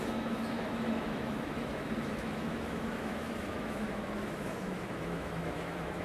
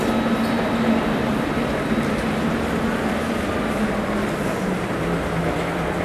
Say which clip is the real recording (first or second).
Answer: second